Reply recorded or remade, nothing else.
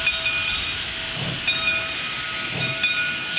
recorded